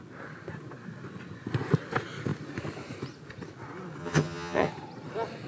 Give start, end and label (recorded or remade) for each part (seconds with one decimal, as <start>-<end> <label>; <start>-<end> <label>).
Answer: 0.0-4.0 recorded; 4.0-4.7 remade; 4.7-5.5 recorded